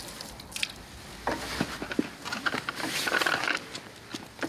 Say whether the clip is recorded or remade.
recorded